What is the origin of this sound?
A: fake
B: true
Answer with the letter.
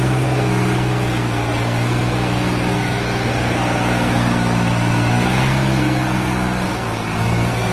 A